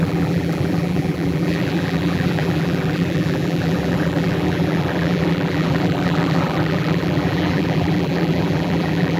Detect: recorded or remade remade